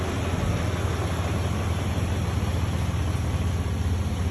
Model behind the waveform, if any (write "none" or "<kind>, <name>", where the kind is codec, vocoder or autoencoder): none